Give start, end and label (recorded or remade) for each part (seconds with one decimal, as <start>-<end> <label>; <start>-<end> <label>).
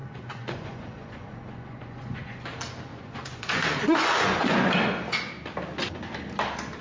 0.0-2.4 remade; 2.4-2.9 recorded; 2.9-4.8 remade; 4.8-6.8 recorded